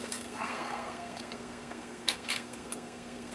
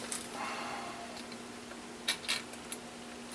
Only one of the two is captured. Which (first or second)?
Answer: second